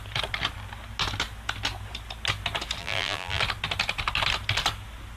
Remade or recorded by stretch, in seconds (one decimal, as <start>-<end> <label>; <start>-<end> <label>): 0.0-2.8 recorded; 2.8-3.4 remade; 3.4-5.2 recorded